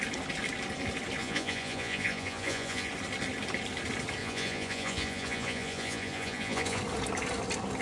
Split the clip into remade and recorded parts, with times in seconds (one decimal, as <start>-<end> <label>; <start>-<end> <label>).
0.0-1.2 recorded; 1.2-2.9 remade; 2.9-4.2 recorded; 4.2-6.8 remade; 6.8-7.8 recorded

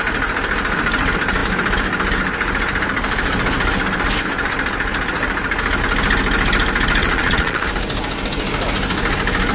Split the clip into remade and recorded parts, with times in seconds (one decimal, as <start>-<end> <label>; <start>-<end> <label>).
0.0-7.0 recorded; 7.0-7.7 remade; 7.7-9.5 recorded

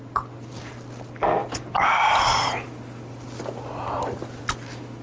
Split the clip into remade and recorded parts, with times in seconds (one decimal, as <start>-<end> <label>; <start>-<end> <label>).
0.0-5.0 recorded

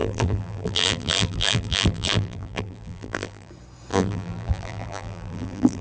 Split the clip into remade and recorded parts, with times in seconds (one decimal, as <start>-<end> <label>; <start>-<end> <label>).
0.0-3.5 remade; 3.5-3.9 recorded; 3.9-5.8 remade

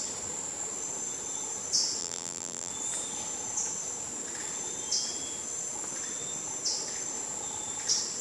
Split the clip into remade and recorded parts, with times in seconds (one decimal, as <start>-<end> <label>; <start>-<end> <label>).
0.0-2.0 recorded; 2.0-2.7 remade; 2.7-8.2 recorded